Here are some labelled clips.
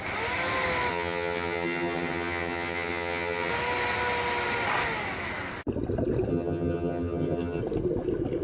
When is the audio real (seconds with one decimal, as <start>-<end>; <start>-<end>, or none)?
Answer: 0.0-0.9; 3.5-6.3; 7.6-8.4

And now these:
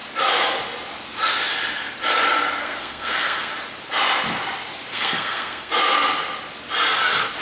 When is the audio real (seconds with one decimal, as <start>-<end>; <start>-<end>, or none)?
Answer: 0.0-2.6; 3.5-4.9; 5.7-7.4

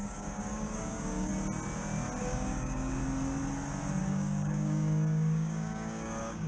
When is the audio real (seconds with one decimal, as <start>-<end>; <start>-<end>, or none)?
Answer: 1.3-2.2; 3.0-4.0